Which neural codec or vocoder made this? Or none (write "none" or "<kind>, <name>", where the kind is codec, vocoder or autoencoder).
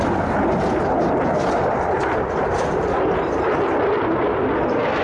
none